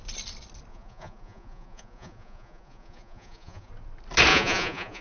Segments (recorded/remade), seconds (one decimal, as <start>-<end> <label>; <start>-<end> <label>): 0.0-0.7 recorded; 0.7-3.7 remade; 3.7-4.3 recorded; 4.3-5.0 remade